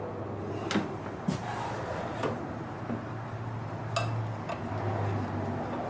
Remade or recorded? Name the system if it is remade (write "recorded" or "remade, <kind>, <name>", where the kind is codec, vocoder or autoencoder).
recorded